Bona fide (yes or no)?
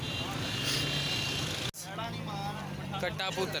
yes